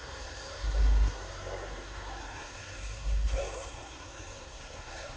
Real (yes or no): no